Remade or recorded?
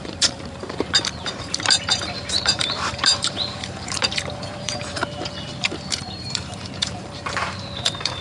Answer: remade